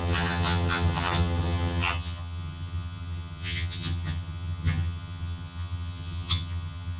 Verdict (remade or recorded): remade